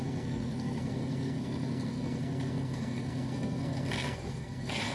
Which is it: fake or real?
fake